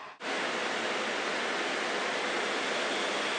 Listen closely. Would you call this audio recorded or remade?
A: recorded